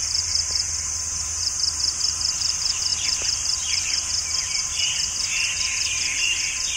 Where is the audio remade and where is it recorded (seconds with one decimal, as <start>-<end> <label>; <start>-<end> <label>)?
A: 0.0-6.8 remade